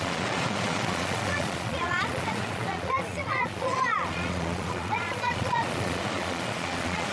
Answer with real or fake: fake